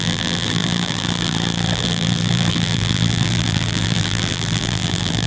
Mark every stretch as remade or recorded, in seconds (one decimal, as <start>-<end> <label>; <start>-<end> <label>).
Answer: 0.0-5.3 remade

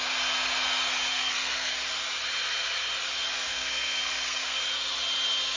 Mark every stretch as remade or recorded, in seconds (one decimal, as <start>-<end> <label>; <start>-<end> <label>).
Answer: 0.0-1.1 recorded; 1.1-1.7 remade; 1.7-3.5 recorded; 3.5-4.6 remade; 4.6-5.6 recorded

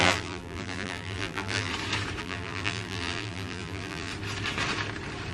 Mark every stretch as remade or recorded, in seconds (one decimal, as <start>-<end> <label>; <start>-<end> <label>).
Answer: 0.0-1.7 remade; 1.7-2.2 recorded; 2.2-4.1 remade; 4.1-5.3 recorded